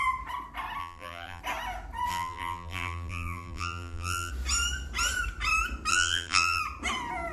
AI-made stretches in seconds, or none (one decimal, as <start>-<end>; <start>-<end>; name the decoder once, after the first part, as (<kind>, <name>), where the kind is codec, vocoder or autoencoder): 0.8-1.4 (vocoder, BigVGAN v2); 2.1-4.3; 5.9-6.6

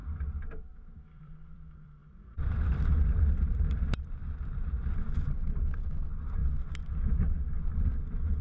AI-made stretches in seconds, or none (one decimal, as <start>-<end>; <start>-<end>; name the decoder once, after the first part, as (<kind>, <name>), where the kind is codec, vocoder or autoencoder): 0.0-6.4 (vocoder, BigVGAN v2); 7.7-8.4

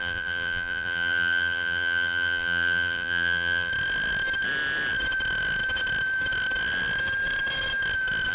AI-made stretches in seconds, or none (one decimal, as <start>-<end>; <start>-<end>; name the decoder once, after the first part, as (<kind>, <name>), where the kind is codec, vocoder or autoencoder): 0.0-3.7 (vocoder, BigVGAN v2)

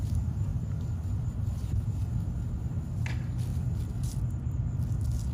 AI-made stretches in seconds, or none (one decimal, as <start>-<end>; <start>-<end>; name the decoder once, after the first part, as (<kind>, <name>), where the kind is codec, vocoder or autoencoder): 3.5-4.2 (vocoder, BigVGAN v2)